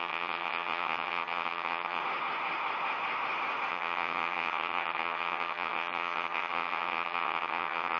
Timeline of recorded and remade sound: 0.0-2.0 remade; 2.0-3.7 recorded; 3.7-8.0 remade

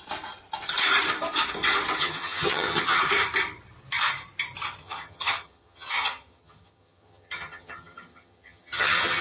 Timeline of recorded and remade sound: 0.0-2.0 recorded; 2.0-3.0 remade; 3.0-4.8 recorded; 4.8-9.2 remade

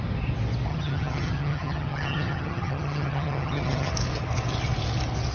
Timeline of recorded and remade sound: 0.0-0.7 recorded; 0.7-3.9 remade; 3.9-5.3 recorded

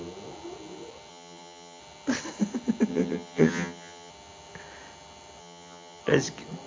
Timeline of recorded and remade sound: 0.0-1.1 recorded; 1.1-1.8 remade; 1.8-2.9 recorded; 2.9-4.1 remade; 4.1-5.4 recorded; 5.4-6.0 remade; 6.0-6.7 recorded

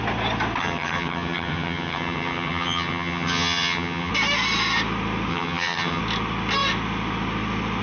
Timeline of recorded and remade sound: 0.0-0.6 recorded; 0.6-4.1 remade; 4.1-5.3 recorded; 5.3-6.0 remade; 6.0-7.8 recorded

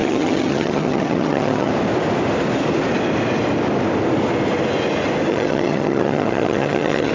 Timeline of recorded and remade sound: 0.0-1.7 remade; 1.7-5.3 recorded; 5.3-7.1 remade

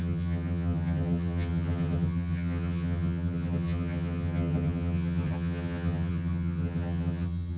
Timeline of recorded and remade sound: 0.0-7.6 remade